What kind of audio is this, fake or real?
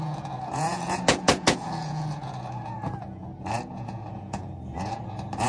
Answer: fake